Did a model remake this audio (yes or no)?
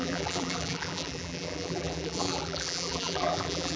yes